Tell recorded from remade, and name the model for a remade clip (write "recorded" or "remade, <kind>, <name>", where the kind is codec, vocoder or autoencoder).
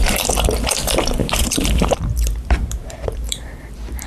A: remade, vocoder, BigVGAN v2